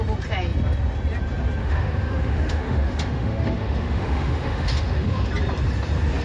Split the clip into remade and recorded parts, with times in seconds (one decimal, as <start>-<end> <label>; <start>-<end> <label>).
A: 0.0-1.6 recorded; 1.6-5.3 remade; 5.3-6.2 recorded